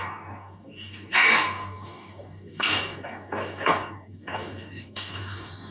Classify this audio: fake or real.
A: fake